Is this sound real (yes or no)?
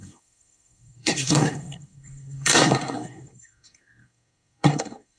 no